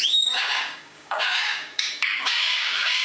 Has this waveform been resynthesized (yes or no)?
yes